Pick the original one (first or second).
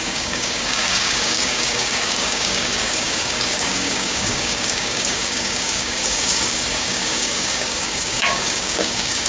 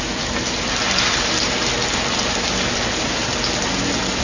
second